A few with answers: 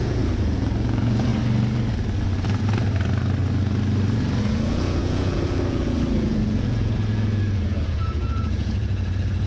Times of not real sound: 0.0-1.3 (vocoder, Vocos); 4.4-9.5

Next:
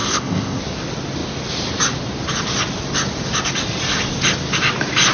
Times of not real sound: 0.0-0.6 (codec, ZipCodec)

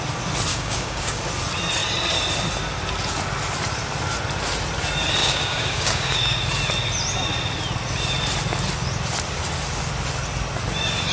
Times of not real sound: 0.5-1.2 (codec, DAC); 5.2-6.4

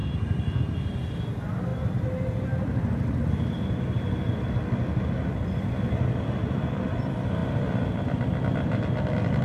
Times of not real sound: none

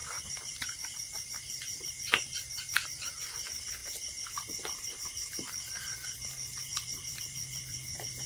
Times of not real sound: 0.0-3.1 (vocoder, BigVGAN v2)

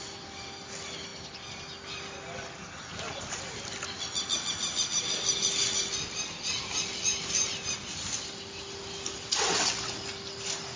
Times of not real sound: none

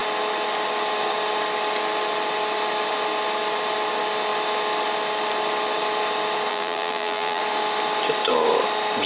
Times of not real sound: 6.5-7.4 (vocoder, BigVGAN v2)

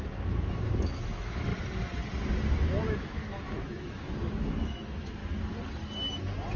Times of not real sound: 0.0-1.5 (autoencoder, DAC-VAE); 2.9-5.2